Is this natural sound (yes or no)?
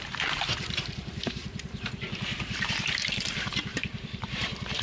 no